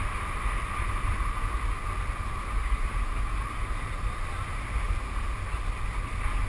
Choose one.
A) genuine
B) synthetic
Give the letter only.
A